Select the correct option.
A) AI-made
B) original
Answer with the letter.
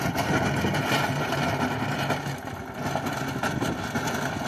B